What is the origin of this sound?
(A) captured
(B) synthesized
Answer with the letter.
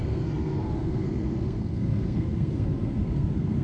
B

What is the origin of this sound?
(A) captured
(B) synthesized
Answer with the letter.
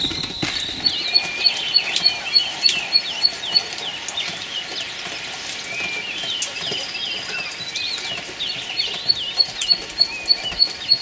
A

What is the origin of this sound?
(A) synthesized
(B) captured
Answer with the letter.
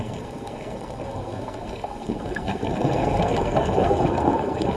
A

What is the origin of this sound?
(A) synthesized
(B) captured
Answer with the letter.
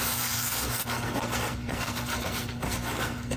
A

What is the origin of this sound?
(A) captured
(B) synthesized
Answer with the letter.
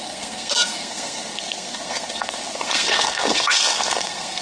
B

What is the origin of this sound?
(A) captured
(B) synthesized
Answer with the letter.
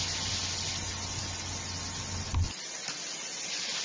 A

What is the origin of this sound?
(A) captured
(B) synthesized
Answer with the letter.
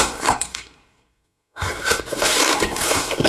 B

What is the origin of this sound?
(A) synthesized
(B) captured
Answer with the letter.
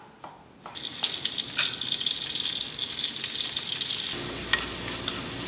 B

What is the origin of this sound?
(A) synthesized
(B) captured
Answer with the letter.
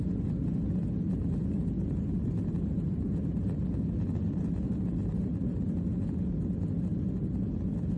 B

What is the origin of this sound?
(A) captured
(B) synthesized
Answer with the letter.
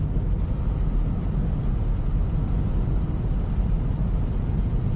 A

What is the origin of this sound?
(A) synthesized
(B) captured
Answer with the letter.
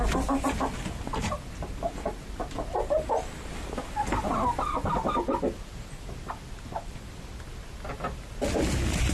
B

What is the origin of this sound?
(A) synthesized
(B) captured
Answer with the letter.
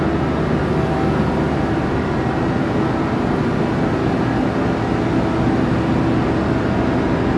B